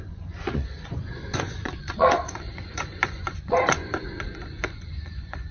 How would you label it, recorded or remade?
remade